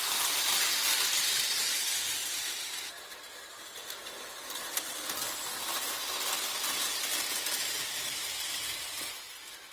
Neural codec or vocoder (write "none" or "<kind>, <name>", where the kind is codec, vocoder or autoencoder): none